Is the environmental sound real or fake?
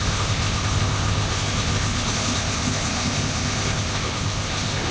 fake